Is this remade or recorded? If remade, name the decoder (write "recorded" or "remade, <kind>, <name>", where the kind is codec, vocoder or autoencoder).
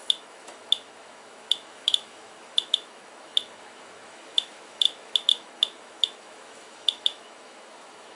remade, autoencoder, DAC-VAE